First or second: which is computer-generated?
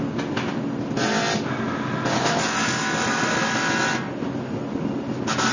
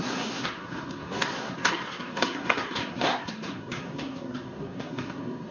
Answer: second